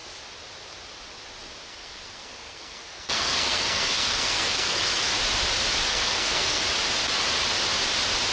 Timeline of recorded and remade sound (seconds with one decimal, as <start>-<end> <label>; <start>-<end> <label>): 0.0-1.7 recorded; 1.7-5.1 remade; 5.1-5.9 recorded; 5.9-6.6 remade; 6.6-8.3 recorded